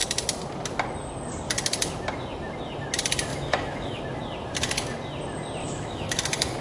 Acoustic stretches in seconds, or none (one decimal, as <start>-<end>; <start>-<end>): 0.0-3.3; 4.0-5.6